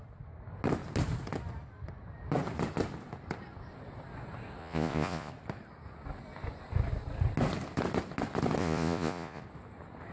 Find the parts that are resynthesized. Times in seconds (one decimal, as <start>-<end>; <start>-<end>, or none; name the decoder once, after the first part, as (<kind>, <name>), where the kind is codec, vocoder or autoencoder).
4.6-5.3 (vocoder, Vocos); 8.6-9.4